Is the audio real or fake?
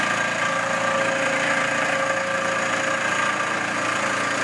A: real